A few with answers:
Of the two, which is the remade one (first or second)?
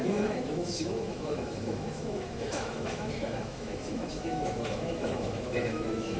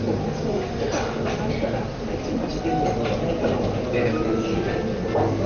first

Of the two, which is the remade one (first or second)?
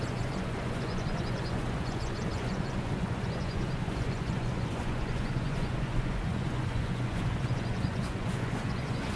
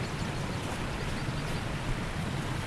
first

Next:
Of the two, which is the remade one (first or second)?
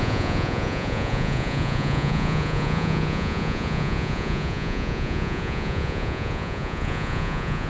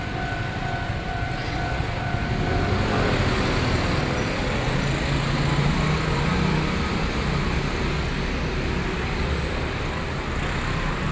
first